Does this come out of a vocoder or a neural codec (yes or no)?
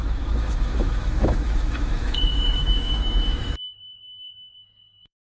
yes